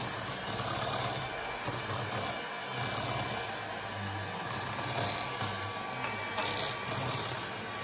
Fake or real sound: real